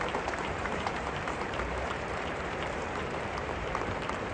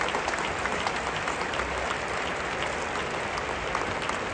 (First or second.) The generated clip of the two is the first